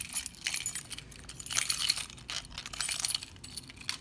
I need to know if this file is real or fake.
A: real